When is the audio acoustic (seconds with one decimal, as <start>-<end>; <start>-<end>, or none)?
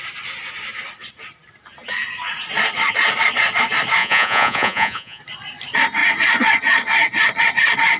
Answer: 0.0-4.0; 5.2-8.0